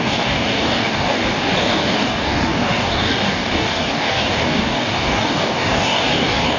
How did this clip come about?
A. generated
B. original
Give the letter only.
A